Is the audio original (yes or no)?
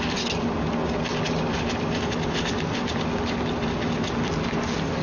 yes